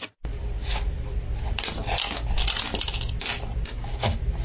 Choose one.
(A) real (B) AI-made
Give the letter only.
A